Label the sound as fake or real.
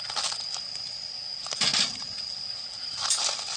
real